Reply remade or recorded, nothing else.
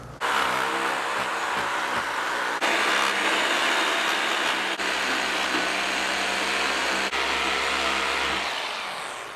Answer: recorded